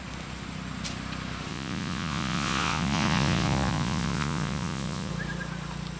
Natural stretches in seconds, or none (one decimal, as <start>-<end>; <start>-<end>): 0.0-1.5; 5.1-6.0

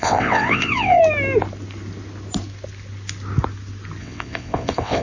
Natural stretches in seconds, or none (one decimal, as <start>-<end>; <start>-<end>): 1.0-4.0